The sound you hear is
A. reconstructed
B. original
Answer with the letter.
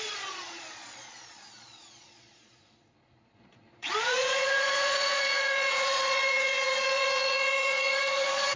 A